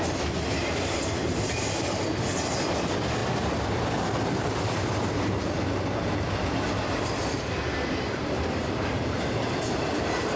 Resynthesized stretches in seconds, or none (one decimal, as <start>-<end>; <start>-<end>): none